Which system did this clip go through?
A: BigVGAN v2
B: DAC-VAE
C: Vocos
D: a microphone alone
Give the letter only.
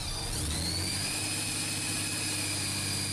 D